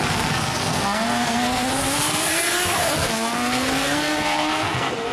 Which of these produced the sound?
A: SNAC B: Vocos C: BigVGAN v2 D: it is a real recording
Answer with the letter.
A